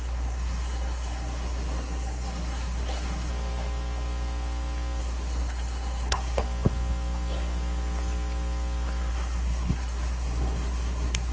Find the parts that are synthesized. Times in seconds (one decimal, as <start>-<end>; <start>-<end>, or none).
0.0-3.3; 5.0-6.4; 9.1-11.3